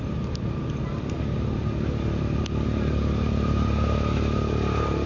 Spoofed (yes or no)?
no